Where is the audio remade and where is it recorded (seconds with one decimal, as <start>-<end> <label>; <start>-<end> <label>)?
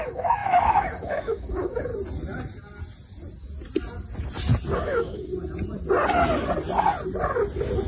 0.0-1.9 remade; 1.9-4.8 recorded; 4.8-5.3 remade; 5.3-7.9 recorded